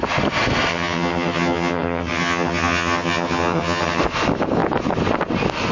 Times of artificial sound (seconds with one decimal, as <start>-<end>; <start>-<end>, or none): 0.7-4.0